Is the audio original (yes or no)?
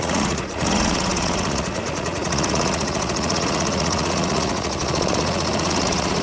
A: no